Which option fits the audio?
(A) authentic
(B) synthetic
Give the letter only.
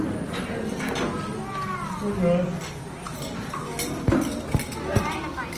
A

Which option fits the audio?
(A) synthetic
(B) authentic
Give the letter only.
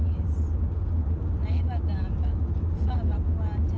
B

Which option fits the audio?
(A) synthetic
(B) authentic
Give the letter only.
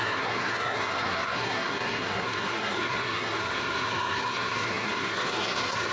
A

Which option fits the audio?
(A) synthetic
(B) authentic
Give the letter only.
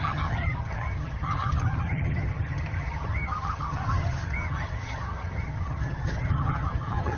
A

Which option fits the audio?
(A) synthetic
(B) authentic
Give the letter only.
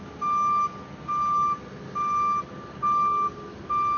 B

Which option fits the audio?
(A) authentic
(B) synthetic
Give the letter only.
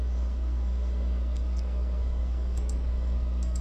B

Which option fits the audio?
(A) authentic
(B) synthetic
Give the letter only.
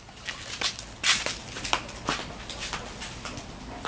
A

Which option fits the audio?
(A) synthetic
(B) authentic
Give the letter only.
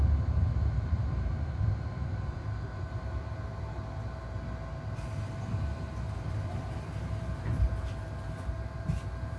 A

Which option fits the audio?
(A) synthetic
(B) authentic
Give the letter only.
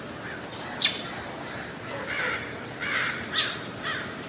B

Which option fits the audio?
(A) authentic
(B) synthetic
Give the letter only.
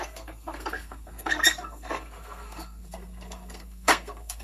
B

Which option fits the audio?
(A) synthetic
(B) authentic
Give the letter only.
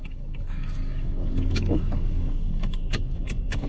A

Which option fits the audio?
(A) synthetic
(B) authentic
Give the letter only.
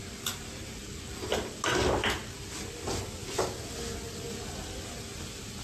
B